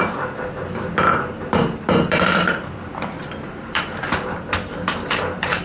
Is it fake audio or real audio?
fake